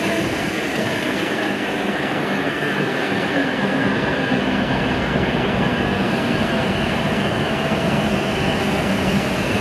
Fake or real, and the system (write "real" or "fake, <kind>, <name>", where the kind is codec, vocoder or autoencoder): fake, codec, SNAC